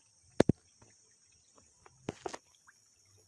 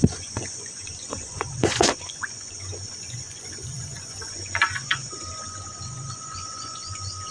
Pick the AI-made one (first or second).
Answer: second